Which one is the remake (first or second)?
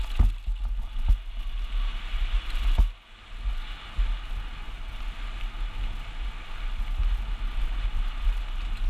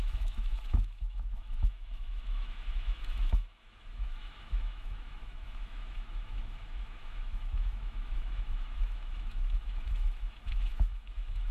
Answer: second